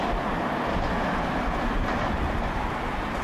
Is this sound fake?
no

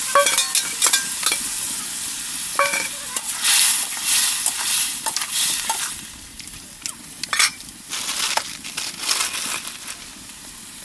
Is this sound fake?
no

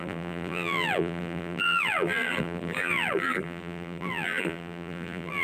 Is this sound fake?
yes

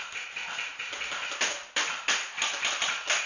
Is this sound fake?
no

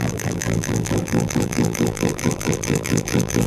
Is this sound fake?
yes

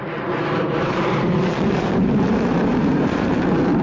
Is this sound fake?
yes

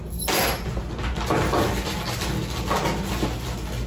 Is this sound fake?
no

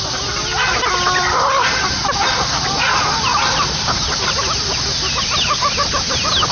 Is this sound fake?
no